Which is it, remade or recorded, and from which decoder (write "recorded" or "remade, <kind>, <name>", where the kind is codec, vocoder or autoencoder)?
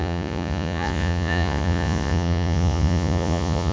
remade, vocoder, Vocos